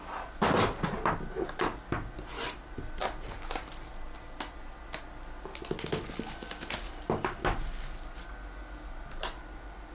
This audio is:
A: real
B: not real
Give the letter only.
A